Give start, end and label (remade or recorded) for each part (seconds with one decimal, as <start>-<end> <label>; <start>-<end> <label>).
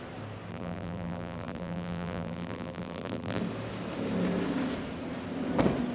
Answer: 0.0-0.5 recorded; 0.5-3.4 remade; 3.4-5.9 recorded